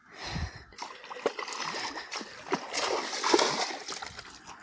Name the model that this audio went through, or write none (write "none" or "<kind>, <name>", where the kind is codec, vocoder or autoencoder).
none